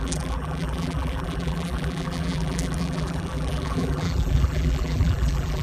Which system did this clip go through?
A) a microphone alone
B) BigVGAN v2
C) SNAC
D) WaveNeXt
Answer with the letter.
B